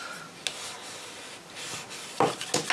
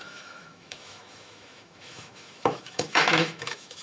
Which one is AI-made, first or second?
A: second